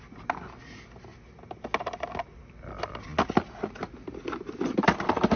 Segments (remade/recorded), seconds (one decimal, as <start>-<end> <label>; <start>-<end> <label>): 0.0-5.4 recorded